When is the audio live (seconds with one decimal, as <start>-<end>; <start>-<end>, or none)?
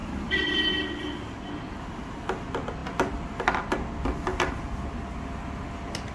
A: 0.8-6.1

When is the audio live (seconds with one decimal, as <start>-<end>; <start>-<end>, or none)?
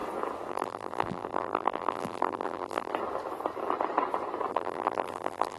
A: 0.0-0.5; 2.9-4.5